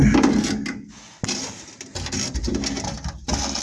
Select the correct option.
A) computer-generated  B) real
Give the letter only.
B